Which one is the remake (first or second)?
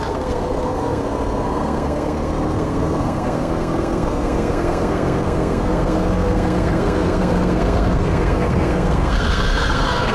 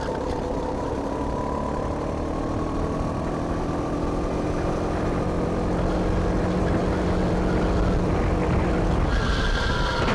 first